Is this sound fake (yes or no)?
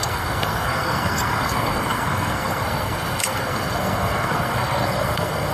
yes